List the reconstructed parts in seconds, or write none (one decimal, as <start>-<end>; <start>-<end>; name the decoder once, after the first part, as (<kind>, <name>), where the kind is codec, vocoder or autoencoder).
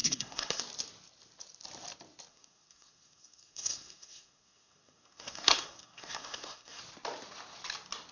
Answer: 0.0-0.6 (codec, SNAC); 2.3-6.8